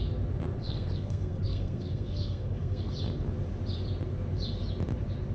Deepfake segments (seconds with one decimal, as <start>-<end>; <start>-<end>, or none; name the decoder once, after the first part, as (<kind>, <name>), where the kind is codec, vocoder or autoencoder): 0.6-2.9 (codec, SNAC)